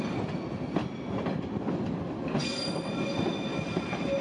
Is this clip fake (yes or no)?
no